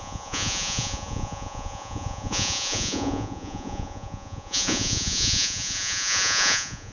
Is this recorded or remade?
remade